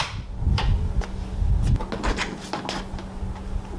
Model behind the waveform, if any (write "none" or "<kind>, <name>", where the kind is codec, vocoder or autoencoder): none